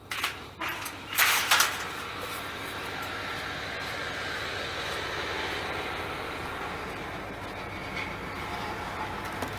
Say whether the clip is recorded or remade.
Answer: recorded